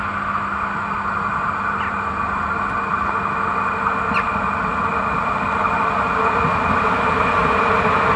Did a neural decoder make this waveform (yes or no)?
no